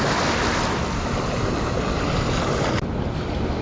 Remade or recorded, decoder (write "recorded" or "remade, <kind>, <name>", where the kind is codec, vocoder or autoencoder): recorded